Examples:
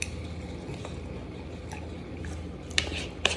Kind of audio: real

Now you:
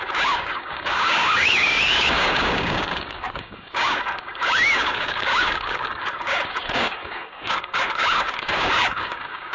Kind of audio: fake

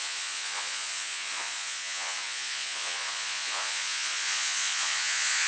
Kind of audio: fake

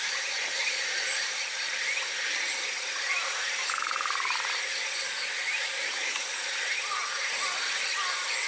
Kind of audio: real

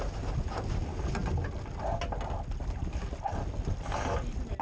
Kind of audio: real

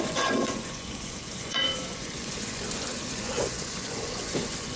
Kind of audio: fake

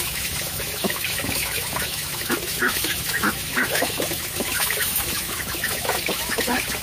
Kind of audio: fake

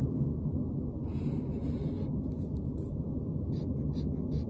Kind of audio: real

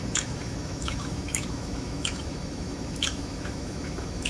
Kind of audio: fake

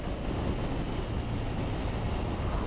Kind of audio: real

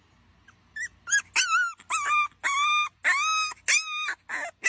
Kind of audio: real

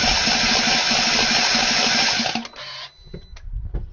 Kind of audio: real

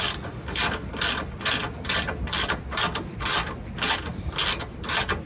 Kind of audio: real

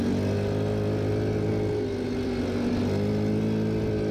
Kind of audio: real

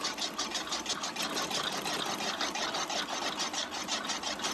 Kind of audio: real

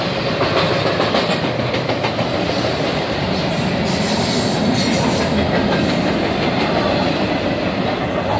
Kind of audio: real